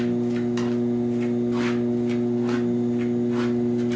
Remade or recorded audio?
recorded